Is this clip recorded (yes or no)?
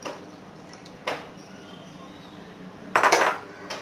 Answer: no